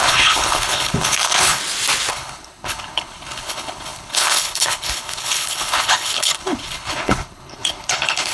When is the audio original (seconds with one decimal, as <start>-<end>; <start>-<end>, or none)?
1.6-2.1

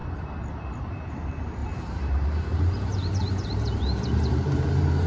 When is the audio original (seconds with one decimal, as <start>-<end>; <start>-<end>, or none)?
0.0-1.6

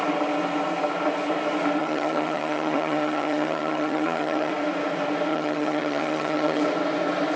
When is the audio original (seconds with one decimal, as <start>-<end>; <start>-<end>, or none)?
0.0-1.8; 4.5-5.3; 6.6-7.4

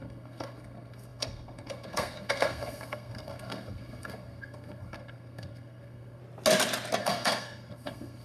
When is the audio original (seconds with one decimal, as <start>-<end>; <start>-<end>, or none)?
6.2-7.0